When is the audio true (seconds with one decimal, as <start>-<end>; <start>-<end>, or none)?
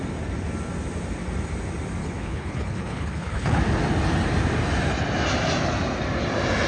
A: 0.0-2.0; 3.6-6.7